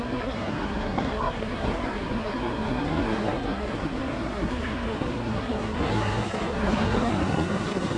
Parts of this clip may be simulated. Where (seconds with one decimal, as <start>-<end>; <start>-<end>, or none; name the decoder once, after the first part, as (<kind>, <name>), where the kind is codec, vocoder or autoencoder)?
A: 0.0-8.0 (codec, SNAC)